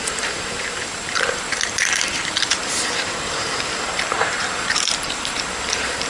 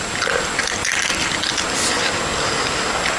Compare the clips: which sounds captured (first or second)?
second